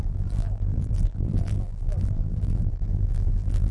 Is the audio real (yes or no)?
no